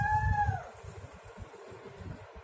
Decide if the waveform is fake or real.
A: real